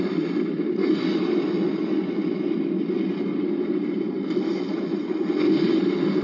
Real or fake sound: fake